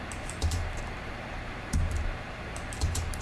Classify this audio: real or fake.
fake